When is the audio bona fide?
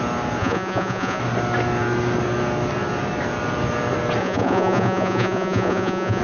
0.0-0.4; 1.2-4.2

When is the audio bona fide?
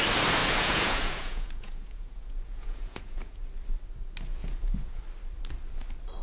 0.0-0.4; 3.3-4.4; 5.0-6.2